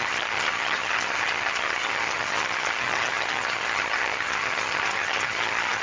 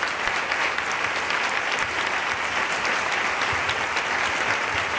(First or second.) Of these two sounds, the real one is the second